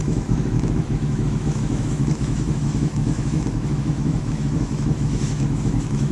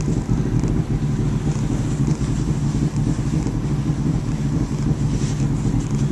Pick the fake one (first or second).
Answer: first